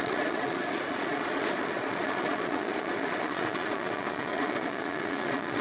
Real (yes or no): no